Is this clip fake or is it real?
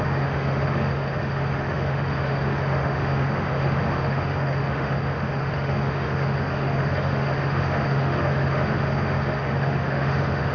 fake